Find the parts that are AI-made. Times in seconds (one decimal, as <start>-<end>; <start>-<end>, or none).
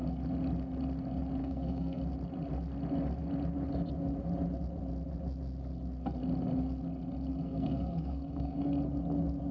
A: 1.4-2.0; 7.4-8.6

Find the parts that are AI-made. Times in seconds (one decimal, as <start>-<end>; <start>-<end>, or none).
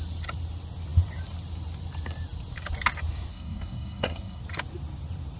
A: 3.3-4.4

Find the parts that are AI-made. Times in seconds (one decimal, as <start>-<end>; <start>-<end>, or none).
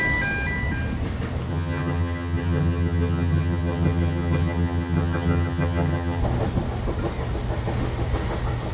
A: 1.5-6.2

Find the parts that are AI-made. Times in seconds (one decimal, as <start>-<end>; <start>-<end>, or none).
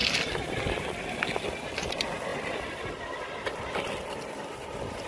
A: 0.0-5.1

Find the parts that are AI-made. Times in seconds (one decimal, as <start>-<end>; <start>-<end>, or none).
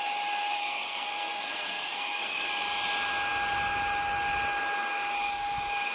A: 0.6-2.5